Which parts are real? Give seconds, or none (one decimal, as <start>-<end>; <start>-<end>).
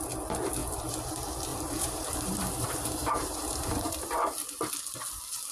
0.0-0.6; 1.1-1.5; 3.9-5.5